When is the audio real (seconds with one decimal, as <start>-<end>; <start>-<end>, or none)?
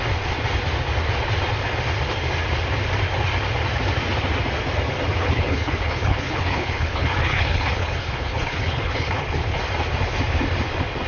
0.0-5.2; 9.6-11.1